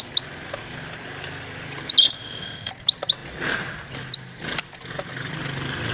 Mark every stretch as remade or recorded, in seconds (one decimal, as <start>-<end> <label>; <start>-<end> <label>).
0.0-2.0 recorded; 2.0-2.7 remade; 2.7-5.9 recorded